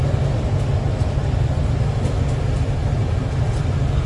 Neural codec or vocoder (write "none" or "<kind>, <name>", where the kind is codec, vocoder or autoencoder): none